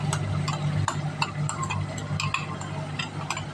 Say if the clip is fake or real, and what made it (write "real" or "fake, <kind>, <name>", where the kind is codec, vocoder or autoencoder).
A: real